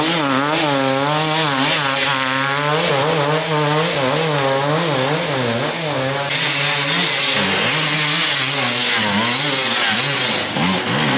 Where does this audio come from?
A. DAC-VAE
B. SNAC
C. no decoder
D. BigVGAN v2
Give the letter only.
C